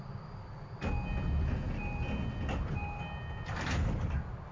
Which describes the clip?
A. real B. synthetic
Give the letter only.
A